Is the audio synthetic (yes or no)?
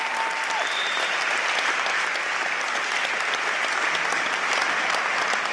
no